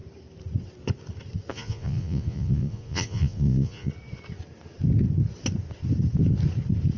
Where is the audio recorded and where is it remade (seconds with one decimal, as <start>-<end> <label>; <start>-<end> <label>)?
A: 0.0-1.5 recorded; 1.5-3.9 remade; 3.9-7.0 recorded